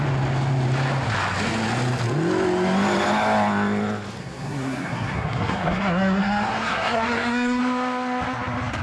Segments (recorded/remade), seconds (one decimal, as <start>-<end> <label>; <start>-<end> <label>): 0.0-4.2 recorded; 4.2-7.6 remade; 7.6-8.8 recorded